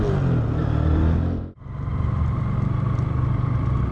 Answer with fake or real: real